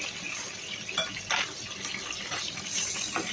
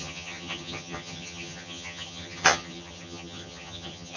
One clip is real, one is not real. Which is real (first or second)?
first